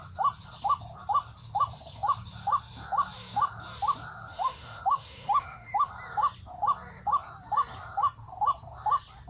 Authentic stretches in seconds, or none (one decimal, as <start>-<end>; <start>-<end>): 0.0-4.3; 5.9-9.3